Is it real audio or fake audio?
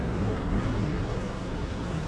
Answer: fake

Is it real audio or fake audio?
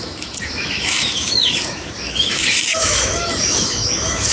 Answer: fake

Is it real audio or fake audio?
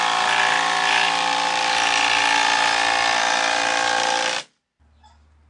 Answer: real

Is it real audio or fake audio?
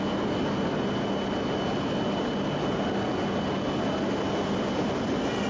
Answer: real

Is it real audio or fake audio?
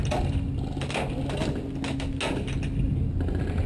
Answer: real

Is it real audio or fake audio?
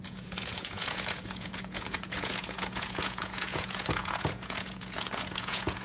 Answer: fake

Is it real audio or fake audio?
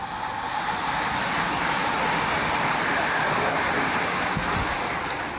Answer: real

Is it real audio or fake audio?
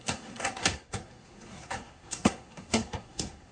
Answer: fake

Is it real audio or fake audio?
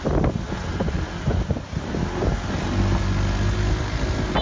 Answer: real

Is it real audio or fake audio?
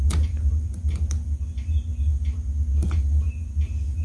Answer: real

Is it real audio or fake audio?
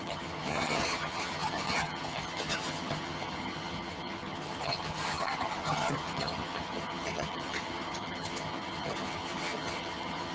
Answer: fake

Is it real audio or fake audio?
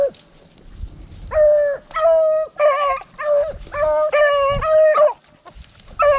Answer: real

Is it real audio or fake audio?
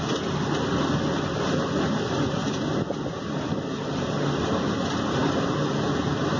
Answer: real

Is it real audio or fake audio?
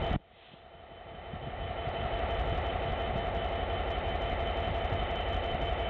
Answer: real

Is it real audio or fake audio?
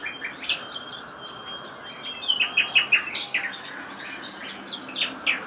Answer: real